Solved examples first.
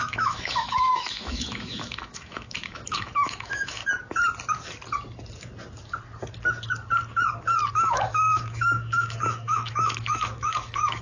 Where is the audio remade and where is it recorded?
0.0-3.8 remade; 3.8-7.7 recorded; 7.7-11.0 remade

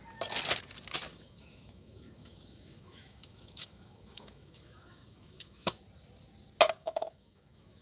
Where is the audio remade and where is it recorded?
0.0-1.1 recorded; 1.1-5.8 remade; 5.8-6.8 recorded; 6.8-7.8 remade

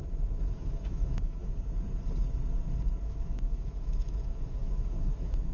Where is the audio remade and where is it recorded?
0.0-1.4 remade; 1.4-3.0 recorded; 3.0-5.5 remade

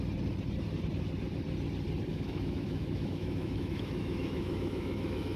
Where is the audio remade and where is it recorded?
0.0-2.1 recorded; 2.1-5.4 remade

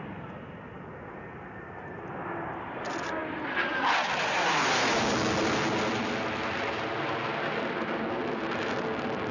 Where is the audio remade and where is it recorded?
0.0-9.3 recorded

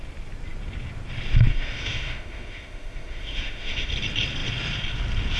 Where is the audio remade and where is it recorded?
0.0-1.5 recorded; 1.5-3.9 remade; 3.9-5.4 recorded

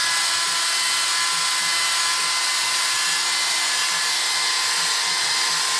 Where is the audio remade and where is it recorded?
0.0-5.8 recorded